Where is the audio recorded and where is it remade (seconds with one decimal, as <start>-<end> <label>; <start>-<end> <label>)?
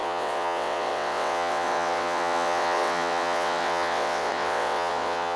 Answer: 0.0-5.4 remade